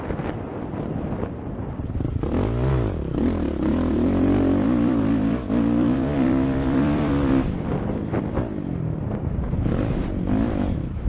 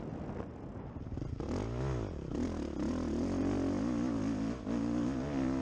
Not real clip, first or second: first